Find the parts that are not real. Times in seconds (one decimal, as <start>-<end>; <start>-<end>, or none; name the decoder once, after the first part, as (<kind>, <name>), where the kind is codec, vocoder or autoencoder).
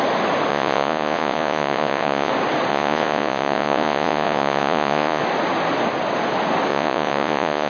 0.5-2.3 (vocoder, Vocos); 2.7-5.2; 6.7-7.7